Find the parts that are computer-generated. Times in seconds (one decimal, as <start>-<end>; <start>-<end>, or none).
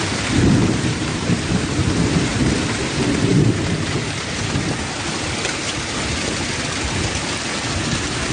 0.6-2.1